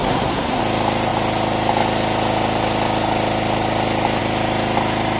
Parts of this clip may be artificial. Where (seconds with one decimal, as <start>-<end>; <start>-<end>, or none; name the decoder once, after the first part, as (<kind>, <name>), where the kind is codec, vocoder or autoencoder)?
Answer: 0.0-0.6 (codec, SNAC)